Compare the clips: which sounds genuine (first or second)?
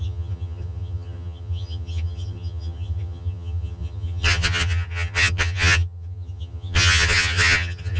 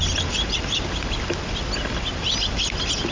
second